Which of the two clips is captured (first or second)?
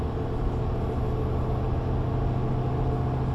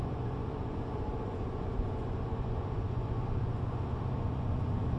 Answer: first